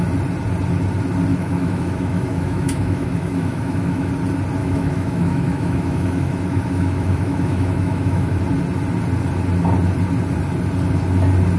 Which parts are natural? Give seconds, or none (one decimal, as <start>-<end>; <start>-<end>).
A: 0.0-1.3; 4.1-4.6; 8.4-11.6